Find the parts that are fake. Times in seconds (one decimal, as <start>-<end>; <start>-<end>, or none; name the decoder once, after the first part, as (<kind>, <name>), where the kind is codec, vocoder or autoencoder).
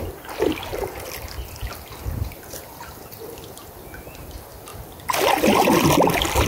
none